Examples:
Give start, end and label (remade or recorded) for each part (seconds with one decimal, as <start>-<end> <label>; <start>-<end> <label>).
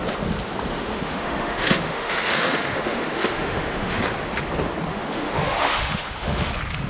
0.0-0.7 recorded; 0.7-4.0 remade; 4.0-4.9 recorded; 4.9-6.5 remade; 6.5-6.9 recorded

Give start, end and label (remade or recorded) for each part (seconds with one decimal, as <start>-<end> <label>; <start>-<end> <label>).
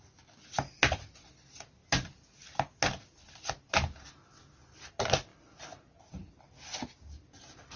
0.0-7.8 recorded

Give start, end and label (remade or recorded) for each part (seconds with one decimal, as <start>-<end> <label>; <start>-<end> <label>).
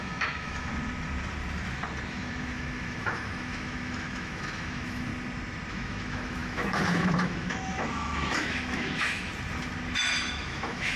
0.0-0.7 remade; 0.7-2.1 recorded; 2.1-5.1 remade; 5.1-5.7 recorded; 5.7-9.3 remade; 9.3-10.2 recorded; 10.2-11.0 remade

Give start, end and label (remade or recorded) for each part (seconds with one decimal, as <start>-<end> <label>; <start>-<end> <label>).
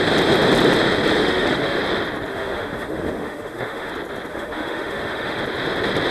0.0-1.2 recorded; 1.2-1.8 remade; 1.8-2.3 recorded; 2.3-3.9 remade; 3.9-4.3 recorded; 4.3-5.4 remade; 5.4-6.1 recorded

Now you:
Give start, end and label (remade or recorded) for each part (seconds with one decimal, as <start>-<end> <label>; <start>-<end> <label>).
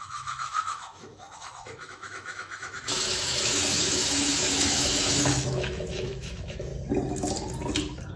0.0-6.7 remade; 6.7-8.2 recorded